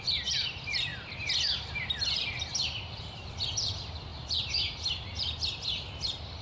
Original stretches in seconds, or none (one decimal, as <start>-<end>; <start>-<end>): none